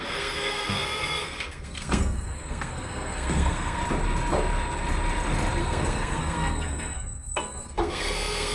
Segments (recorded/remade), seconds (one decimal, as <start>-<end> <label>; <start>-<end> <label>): 0.0-3.8 remade; 3.8-5.6 recorded; 5.6-8.5 remade